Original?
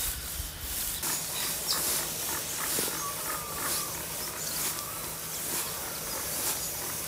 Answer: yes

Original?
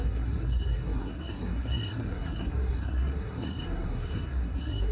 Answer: no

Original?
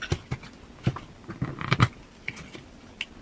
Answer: yes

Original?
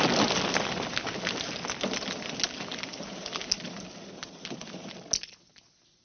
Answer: yes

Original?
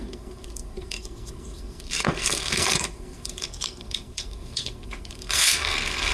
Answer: no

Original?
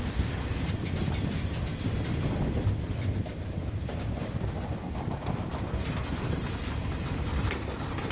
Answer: no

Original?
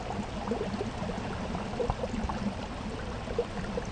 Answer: yes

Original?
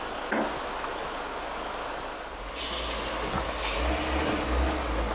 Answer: yes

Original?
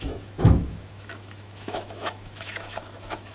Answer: no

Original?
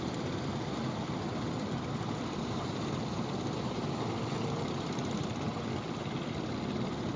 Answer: yes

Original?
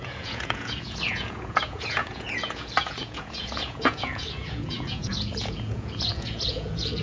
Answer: no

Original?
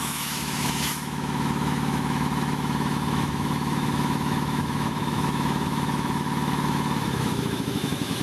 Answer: no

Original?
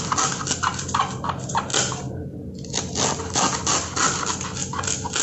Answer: yes